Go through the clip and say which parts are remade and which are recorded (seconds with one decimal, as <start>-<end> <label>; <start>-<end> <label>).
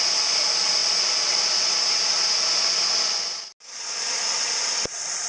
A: 0.0-5.3 recorded